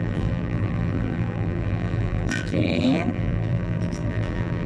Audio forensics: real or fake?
fake